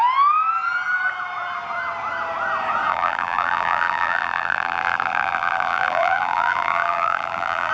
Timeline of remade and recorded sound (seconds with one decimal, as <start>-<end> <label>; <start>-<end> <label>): 0.0-2.9 recorded; 2.9-7.7 remade